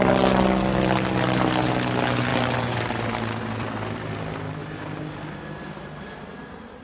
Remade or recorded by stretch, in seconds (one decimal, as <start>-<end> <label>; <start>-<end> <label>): 0.0-6.8 recorded